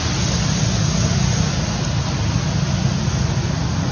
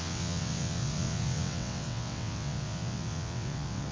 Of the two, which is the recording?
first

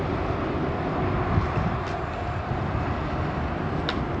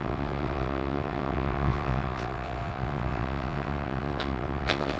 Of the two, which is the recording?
first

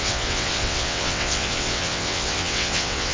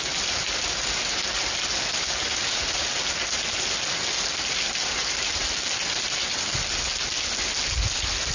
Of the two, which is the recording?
second